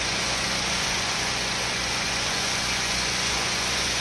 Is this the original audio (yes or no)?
no